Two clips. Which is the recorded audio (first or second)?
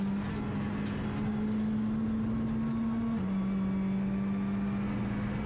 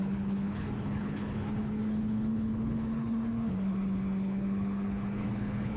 first